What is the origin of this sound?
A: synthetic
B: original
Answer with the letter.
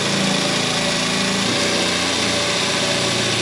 B